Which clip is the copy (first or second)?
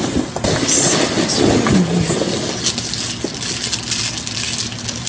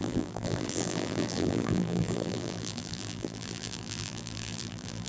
second